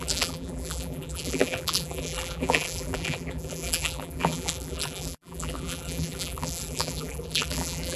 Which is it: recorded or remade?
remade